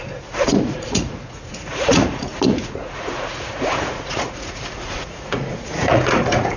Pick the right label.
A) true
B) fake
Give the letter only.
B